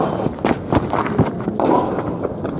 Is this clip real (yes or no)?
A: yes